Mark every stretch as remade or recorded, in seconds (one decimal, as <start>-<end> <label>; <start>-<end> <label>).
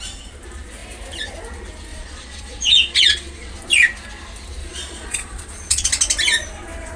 0.0-1.9 recorded; 1.9-3.5 remade; 3.5-4.6 recorded; 4.6-5.9 remade; 5.9-7.0 recorded